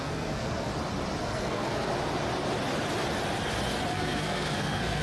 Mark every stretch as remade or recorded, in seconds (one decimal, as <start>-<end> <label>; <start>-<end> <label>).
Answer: 0.0-0.7 remade; 0.7-1.2 recorded; 1.2-1.9 remade; 1.9-3.9 recorded; 3.9-5.0 remade